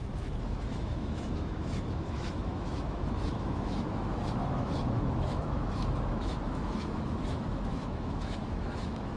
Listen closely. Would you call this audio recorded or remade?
remade